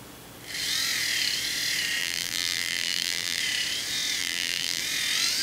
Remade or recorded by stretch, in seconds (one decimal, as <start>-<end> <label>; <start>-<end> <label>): 0.0-2.0 recorded; 2.0-3.4 remade; 3.4-4.2 recorded; 4.2-4.8 remade; 4.8-5.4 recorded